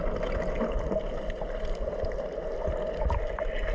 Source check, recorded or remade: recorded